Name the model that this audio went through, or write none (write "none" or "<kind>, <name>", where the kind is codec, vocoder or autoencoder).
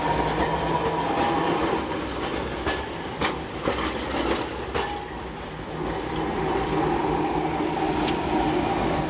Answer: none